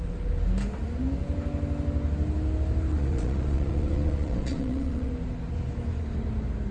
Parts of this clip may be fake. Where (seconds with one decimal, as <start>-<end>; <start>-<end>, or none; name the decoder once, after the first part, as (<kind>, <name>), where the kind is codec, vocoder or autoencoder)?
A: 2.9-5.1 (vocoder, Vocos)